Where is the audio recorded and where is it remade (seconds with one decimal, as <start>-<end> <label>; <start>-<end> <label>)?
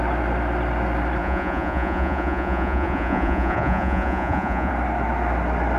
0.0-1.2 recorded; 1.2-4.7 remade; 4.7-5.8 recorded